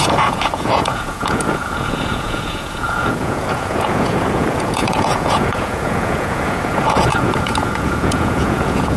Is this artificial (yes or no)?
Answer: yes